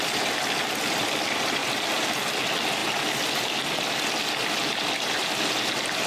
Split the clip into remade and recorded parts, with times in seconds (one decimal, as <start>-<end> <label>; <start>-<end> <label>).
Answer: 0.0-1.6 recorded; 1.6-2.3 remade; 2.3-6.1 recorded